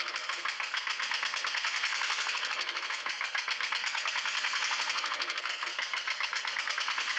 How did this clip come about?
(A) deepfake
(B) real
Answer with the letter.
A